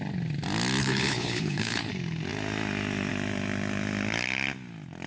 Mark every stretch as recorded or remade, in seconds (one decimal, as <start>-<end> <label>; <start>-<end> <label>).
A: 0.0-0.8 recorded; 0.8-1.9 remade; 1.9-5.1 recorded